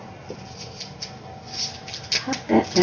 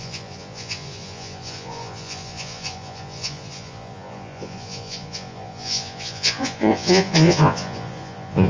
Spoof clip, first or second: second